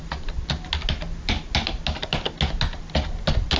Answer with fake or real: real